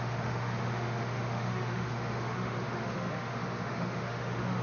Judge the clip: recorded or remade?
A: remade